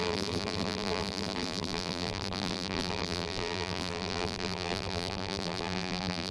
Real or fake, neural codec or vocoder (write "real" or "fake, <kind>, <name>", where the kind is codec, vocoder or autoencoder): fake, vocoder, BigVGAN v2